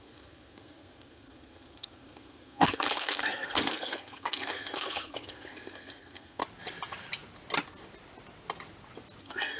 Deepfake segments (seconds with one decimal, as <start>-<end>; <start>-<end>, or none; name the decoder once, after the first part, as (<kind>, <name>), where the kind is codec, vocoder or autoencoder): 0.0-6.4 (codec, SNAC); 9.2-9.6